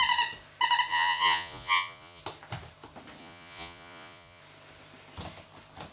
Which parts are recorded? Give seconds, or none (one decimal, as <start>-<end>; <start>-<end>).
0.0-0.9; 2.2-3.2; 4.4-5.9